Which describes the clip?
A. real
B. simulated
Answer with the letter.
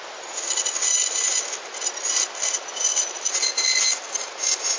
A